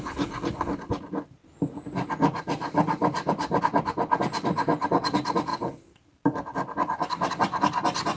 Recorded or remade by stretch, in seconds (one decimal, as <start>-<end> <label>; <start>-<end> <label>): 0.0-1.4 recorded; 1.4-3.6 remade; 3.6-5.5 recorded; 5.5-7.3 remade; 7.3-8.2 recorded